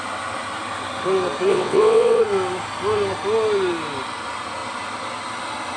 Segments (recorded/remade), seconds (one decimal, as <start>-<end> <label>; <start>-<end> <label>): 0.0-1.5 recorded; 1.5-2.2 remade; 2.2-5.8 recorded